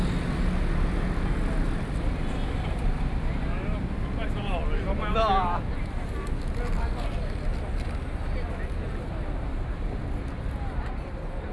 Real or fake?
real